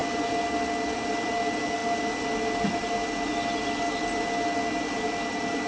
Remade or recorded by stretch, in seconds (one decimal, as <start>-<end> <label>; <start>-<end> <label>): 0.0-5.7 recorded